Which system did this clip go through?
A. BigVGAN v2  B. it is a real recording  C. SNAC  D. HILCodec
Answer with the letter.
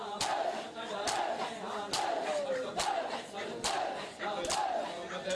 B